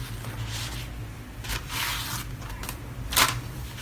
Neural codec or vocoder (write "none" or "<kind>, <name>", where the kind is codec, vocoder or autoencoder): none